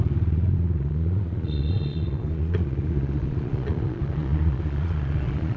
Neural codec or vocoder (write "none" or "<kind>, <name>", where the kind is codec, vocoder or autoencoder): vocoder, Vocos